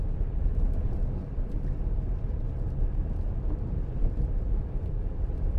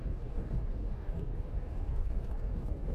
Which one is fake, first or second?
second